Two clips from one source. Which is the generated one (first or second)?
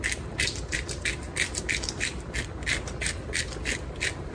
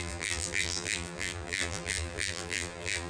second